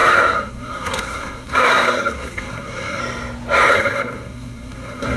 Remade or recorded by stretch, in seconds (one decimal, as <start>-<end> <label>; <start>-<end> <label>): 0.0-3.0 remade; 3.0-3.7 recorded; 3.7-5.2 remade